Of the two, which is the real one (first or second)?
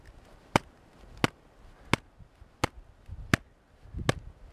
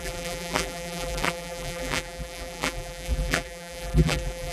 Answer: first